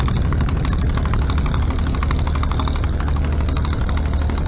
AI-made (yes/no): no